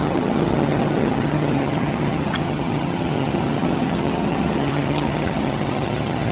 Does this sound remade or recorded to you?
remade